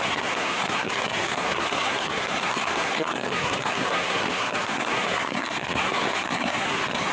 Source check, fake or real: fake